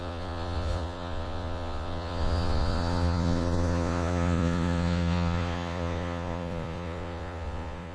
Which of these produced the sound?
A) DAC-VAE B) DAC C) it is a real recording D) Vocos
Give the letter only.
D